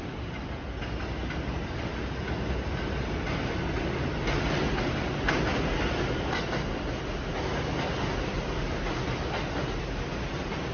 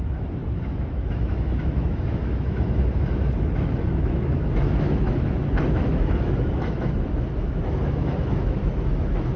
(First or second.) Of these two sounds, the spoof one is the second